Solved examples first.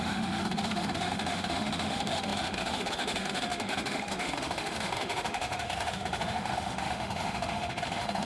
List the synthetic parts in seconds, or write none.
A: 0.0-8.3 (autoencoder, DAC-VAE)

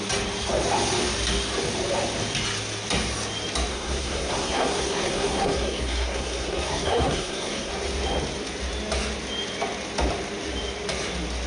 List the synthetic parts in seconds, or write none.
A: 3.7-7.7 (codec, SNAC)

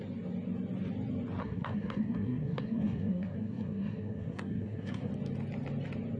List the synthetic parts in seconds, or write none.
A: 1.4-5.1 (codec, SNAC)

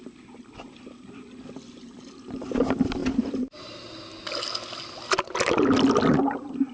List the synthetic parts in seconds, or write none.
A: none

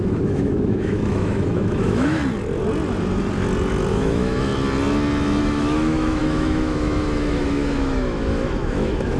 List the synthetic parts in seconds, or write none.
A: 0.0-2.2 (autoencoder, DAC-VAE); 3.9-4.5; 5.4-9.2

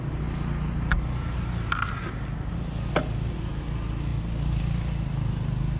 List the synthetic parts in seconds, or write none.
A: none

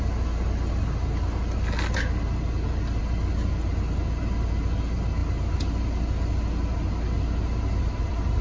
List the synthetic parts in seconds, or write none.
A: none